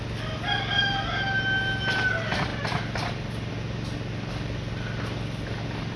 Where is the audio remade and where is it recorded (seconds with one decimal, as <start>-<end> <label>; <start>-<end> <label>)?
0.0-6.0 recorded